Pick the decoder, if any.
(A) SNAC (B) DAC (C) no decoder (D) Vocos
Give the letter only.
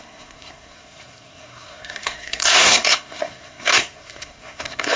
A